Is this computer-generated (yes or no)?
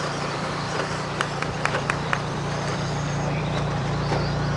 yes